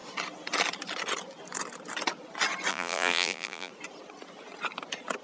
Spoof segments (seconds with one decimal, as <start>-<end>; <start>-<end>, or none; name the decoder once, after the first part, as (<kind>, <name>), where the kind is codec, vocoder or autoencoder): 2.7-3.7 (vocoder, BigVGAN v2)

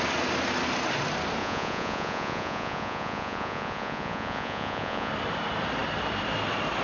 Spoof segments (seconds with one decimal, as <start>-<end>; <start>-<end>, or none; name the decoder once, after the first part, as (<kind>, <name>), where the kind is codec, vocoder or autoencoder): 1.4-5.1 (vocoder, Vocos)

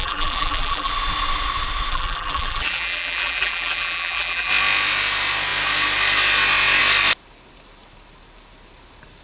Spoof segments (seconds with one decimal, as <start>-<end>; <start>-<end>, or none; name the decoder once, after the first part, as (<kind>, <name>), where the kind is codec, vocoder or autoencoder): 0.0-0.9 (vocoder, BigVGAN v2); 1.9-4.5

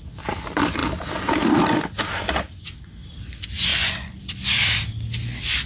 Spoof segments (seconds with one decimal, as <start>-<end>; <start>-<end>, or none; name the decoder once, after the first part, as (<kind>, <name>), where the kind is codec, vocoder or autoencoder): 3.7-4.2 (vocoder, Vocos)

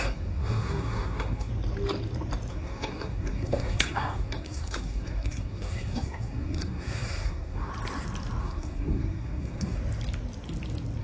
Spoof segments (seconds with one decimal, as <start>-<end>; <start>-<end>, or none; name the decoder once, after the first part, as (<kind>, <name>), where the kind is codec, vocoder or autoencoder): 0.0-1.5 (codec, SNAC); 2.5-7.7; 8.4-9.8